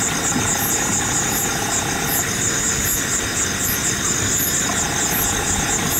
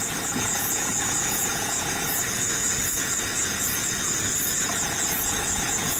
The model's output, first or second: second